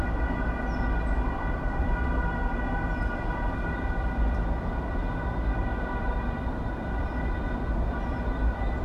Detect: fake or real fake